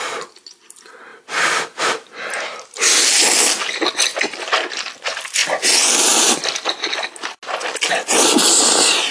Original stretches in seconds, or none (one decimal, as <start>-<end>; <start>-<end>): 0.0-9.1